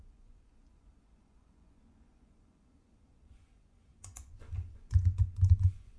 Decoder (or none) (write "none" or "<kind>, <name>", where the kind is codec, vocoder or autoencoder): vocoder, Vocos